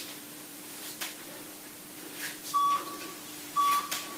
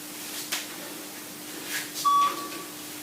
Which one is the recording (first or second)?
second